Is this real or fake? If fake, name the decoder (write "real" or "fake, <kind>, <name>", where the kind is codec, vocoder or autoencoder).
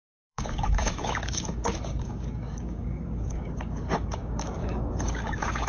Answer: fake, codec, DAC